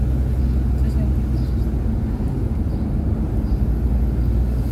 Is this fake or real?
real